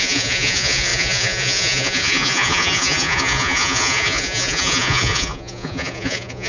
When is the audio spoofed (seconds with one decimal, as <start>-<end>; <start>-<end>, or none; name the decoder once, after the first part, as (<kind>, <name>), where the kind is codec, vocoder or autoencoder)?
0.0-6.5 (vocoder, Vocos)